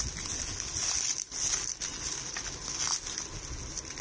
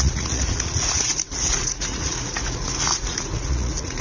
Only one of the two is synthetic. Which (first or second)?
second